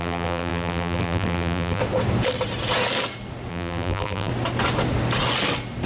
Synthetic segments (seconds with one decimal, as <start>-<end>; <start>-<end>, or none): 0.0-1.8; 3.5-4.3

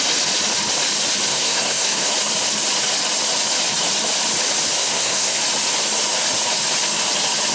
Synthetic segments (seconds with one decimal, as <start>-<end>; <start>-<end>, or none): 1.3-2.1; 4.8-5.4

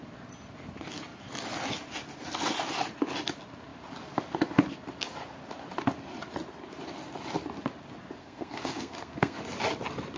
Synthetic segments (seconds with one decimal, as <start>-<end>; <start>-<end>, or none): 8.2-9.4

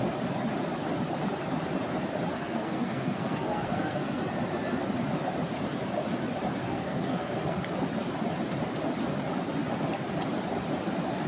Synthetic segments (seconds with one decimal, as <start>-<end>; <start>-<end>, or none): 2.3-4.2; 6.6-7.7

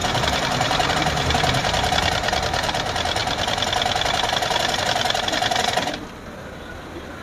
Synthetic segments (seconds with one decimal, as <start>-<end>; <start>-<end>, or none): 0.0-0.9; 1.6-2.1

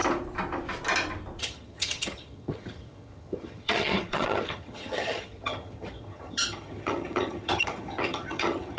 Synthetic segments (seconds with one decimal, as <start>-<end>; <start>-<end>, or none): 1.4-8.8